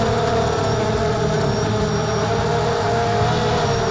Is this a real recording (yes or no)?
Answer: yes